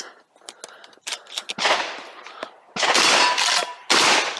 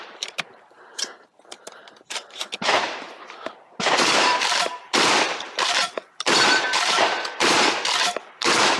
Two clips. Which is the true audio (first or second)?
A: first